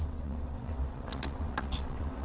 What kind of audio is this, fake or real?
fake